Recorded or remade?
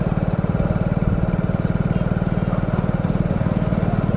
recorded